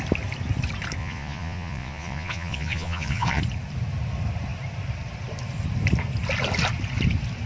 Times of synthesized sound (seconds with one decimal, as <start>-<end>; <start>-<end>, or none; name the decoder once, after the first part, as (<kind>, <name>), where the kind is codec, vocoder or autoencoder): 1.0-3.4 (vocoder, Vocos)